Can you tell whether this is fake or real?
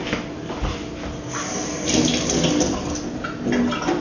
real